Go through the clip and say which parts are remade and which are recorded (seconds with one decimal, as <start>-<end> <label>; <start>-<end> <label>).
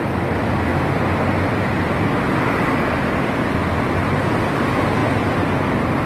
0.0-0.7 recorded; 0.7-4.4 remade; 4.4-6.1 recorded